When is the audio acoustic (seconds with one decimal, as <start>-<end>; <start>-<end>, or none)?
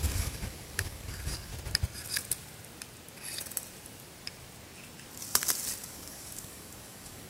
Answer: 1.5-5.8